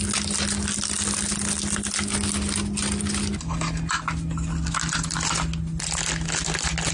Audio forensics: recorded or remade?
recorded